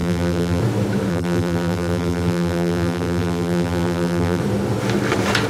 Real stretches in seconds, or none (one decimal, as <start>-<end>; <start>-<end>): 0.6-1.1; 4.4-5.5